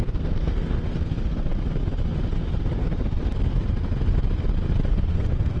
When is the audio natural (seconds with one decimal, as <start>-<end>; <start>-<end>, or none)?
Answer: 1.5-4.9